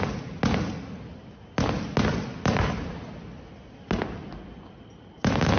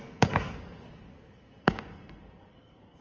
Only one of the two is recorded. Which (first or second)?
first